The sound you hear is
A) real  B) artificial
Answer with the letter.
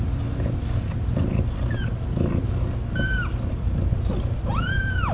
A